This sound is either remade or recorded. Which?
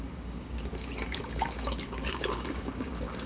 remade